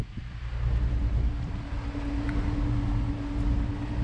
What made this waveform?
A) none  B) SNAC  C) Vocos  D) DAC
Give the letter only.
A